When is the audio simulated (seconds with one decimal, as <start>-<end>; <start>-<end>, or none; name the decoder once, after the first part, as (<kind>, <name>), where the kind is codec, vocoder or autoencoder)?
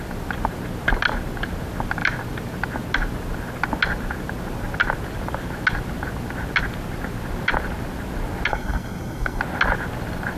8.5-9.4 (codec, SNAC)